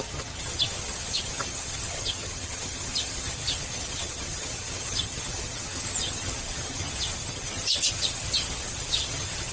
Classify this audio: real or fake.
fake